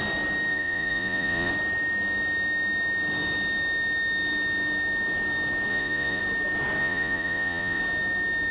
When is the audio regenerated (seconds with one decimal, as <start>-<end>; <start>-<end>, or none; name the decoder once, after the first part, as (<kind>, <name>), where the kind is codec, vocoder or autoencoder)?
0.5-1.5 (vocoder, Vocos); 5.7-6.2; 6.8-7.8